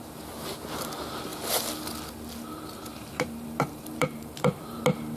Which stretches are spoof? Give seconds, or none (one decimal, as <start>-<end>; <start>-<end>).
2.9-4.8